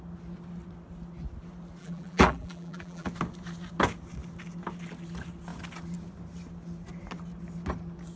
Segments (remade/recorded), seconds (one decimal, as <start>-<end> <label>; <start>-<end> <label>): 0.0-1.8 recorded; 1.8-3.1 remade; 3.1-8.2 recorded

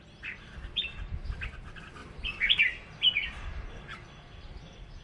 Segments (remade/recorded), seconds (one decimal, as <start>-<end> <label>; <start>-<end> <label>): 0.0-5.0 recorded

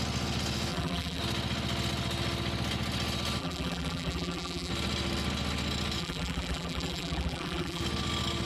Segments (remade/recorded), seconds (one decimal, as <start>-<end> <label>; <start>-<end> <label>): 0.0-0.7 recorded; 0.7-1.2 remade; 1.2-3.4 recorded; 3.4-4.7 remade; 4.7-6.0 recorded; 6.0-7.8 remade; 7.8-8.4 recorded

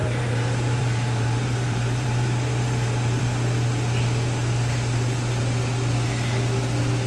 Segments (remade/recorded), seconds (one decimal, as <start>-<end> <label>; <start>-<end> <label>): 0.0-3.2 remade; 3.2-7.1 recorded